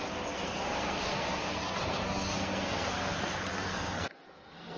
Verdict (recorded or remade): remade